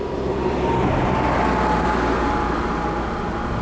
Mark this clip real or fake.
real